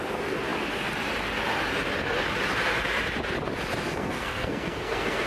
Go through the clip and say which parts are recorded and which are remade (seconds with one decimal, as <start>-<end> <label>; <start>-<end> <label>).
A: 0.0-3.9 recorded; 3.9-5.3 remade